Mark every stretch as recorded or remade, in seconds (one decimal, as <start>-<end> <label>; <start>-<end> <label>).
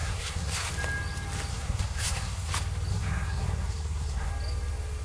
0.0-0.7 remade; 0.7-1.5 recorded; 1.5-2.5 remade; 2.5-2.9 recorded; 2.9-4.3 remade; 4.3-5.0 recorded